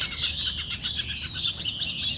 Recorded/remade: recorded